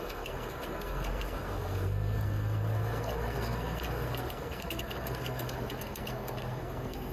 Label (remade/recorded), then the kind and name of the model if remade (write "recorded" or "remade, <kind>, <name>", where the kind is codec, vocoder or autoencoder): remade, codec, SNAC